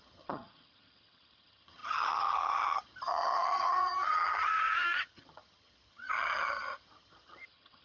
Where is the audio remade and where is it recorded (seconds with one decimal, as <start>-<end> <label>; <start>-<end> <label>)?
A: 0.0-7.8 remade